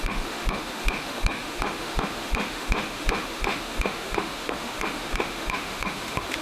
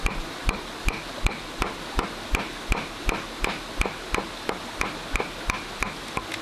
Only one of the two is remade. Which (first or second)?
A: first